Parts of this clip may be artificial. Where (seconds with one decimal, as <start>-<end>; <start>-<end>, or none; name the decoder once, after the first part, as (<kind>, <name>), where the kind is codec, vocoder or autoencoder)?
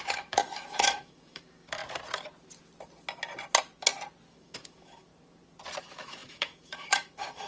0.0-1.8 (autoencoder, DAC-VAE); 4.3-5.1; 5.8-7.5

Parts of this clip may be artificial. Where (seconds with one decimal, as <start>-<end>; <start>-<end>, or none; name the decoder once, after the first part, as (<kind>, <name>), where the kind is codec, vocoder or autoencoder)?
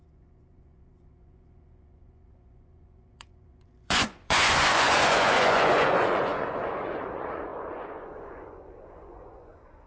0.0-9.9 (vocoder, Vocos)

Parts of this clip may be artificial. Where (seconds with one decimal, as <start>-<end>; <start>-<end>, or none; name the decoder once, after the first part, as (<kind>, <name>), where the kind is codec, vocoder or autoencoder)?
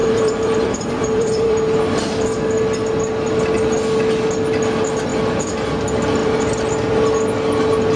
0.0-1.8 (vocoder, BigVGAN v2)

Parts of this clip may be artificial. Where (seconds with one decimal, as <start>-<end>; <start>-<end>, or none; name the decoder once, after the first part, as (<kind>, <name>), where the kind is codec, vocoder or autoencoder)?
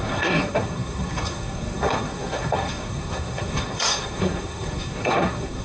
0.0-5.6 (codec, SNAC)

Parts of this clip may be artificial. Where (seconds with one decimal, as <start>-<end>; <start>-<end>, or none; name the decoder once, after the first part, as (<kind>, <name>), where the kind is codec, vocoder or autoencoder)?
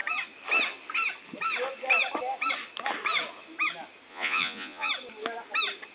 4.1-4.9 (vocoder, Vocos)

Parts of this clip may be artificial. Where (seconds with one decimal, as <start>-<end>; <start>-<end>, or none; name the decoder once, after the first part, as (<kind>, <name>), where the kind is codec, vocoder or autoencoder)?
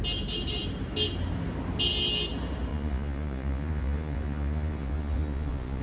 2.7-5.8 (vocoder, Vocos)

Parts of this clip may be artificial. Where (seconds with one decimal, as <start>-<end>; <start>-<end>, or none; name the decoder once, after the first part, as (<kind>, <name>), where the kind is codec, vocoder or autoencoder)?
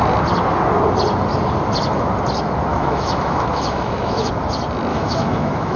2.7-4.3 (autoencoder, DAC-VAE); 4.9-5.8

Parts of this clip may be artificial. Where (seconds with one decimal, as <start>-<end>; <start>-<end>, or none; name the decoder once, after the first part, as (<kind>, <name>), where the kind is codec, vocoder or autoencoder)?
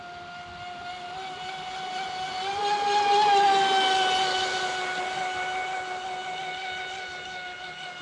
none